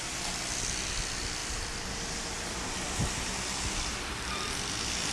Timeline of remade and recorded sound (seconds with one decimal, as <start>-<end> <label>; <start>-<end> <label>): 0.0-1.4 recorded; 1.4-4.5 remade; 4.5-5.1 recorded